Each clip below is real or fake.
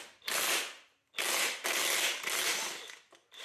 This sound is real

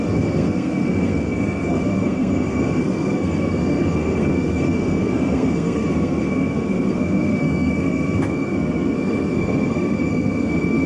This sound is fake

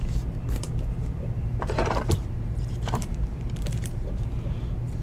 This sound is fake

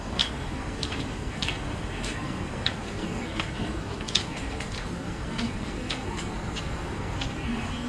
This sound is fake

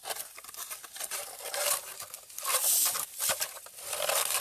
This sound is fake